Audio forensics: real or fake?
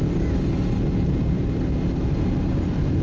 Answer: real